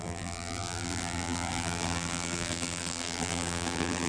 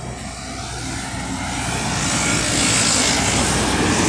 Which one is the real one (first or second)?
second